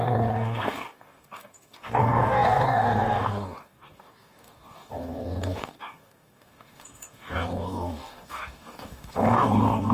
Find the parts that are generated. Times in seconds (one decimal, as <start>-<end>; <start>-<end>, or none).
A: 0.0-9.9